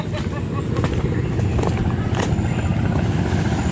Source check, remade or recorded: recorded